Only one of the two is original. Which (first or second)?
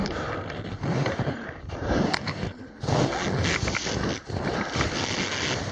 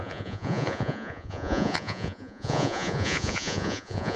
first